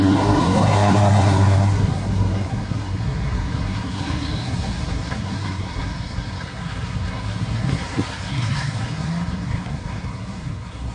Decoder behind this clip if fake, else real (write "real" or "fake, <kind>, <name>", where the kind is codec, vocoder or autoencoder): fake, codec, SNAC